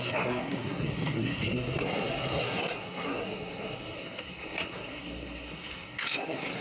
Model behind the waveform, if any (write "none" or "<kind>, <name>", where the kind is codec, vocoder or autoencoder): codec, SNAC